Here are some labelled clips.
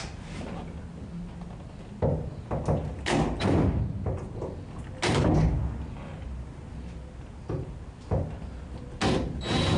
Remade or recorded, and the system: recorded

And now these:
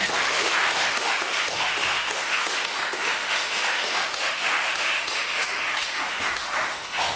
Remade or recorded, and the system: remade, autoencoder, DAC-VAE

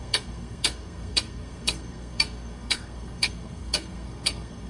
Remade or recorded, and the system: remade, codec, SNAC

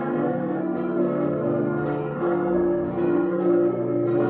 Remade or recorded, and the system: remade, codec, SNAC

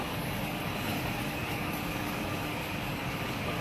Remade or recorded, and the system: remade, codec, DAC